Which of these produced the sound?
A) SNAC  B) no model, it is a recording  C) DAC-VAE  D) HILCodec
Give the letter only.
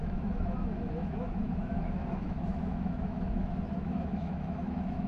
C